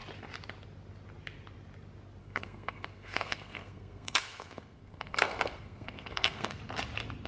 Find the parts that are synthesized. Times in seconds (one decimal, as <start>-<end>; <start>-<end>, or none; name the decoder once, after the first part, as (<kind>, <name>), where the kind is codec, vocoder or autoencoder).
2.2-6.6 (codec, SNAC)